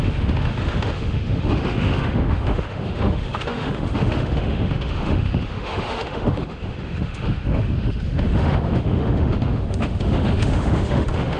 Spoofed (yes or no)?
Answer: yes